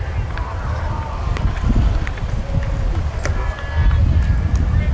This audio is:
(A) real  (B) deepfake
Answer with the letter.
A